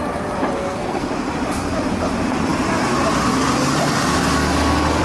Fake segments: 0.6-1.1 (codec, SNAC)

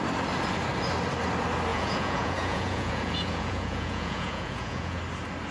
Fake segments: 1.7-5.0 (vocoder, Vocos)

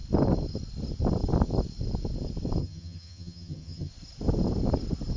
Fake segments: 2.6-3.9 (vocoder, HiFi-GAN)

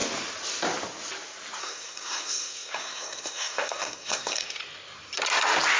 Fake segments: 1.6-4.6 (codec, SNAC)

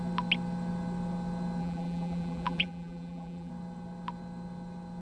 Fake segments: 1.6-3.5 (vocoder, BigVGAN v2)